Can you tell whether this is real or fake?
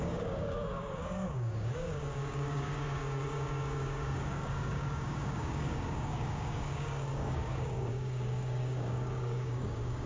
fake